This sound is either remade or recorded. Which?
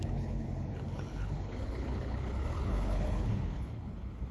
remade